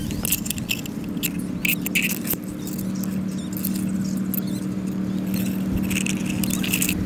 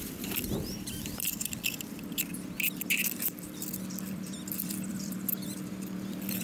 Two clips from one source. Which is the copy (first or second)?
second